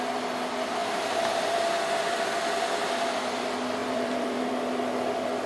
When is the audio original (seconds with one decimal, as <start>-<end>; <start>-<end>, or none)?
0.0-0.8; 2.4-3.8; 4.5-5.5